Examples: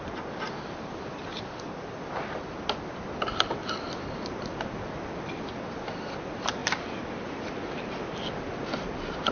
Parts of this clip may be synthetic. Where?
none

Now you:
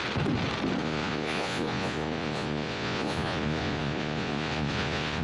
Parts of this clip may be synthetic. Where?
0.8-5.2 (vocoder, Vocos)

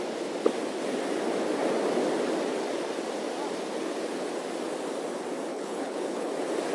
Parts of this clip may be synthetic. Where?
5.5-6.3 (codec, HILCodec)

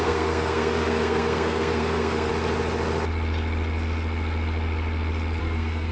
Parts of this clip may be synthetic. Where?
0.0-2.3 (codec, SNAC); 5.4-5.9